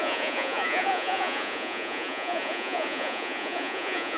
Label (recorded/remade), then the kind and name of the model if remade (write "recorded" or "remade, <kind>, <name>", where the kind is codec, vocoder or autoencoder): remade, vocoder, Vocos